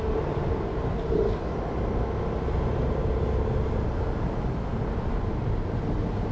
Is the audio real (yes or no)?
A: yes